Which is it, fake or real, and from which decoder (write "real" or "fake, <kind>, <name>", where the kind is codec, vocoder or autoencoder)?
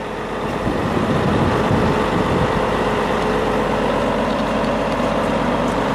fake, vocoder, BigVGAN v2